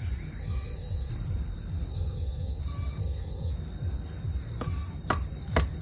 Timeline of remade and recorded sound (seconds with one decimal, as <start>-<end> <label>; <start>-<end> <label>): 0.0-0.4 recorded; 0.4-1.1 remade; 1.1-1.9 recorded; 1.9-2.6 remade; 2.6-3.0 recorded; 3.0-3.5 remade; 3.5-5.8 recorded